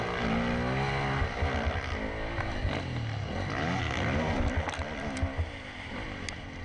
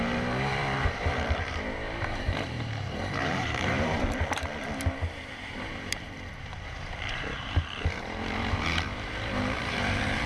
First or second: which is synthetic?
second